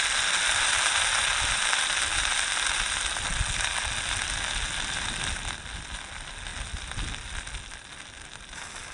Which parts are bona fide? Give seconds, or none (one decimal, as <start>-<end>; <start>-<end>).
0.0-8.9